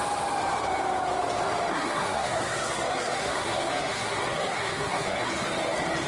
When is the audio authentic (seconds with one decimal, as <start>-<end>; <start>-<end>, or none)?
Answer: 0.0-1.7; 5.3-6.1